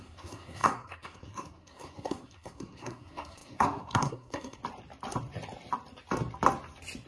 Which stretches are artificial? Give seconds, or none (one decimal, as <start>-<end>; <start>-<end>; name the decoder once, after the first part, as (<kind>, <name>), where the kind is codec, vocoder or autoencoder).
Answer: 0.0-4.6 (codec, SNAC)